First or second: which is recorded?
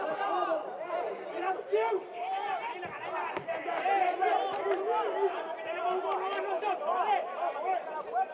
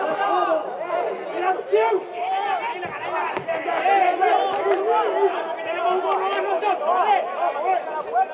second